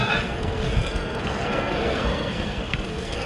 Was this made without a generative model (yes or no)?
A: no